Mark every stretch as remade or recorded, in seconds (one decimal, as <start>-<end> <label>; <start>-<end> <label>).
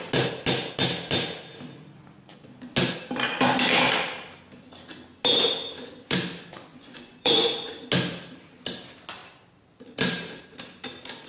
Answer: 0.0-6.7 recorded; 6.7-7.7 remade; 7.7-11.3 recorded